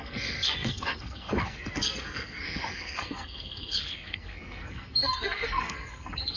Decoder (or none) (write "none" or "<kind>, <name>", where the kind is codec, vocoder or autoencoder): codec, SNAC